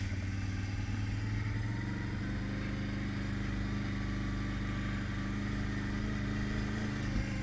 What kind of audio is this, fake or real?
real